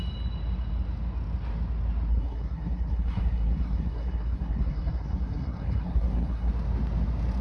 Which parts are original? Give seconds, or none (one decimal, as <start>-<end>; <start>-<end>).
0.0-2.1; 6.5-7.4